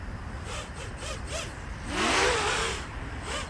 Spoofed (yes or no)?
no